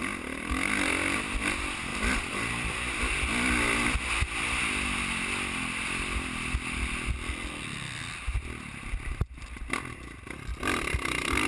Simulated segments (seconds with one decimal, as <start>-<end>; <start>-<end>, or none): 1.9-3.0; 10.5-11.5